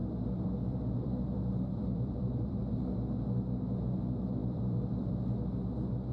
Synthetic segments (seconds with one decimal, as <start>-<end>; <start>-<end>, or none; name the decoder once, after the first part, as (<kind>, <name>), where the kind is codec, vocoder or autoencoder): 0.0-2.6 (vocoder, BigVGAN v2); 4.4-5.1